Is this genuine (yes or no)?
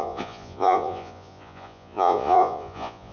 no